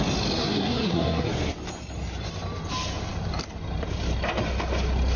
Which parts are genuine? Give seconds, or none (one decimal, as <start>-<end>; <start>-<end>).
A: 0.0-0.4; 1.3-5.2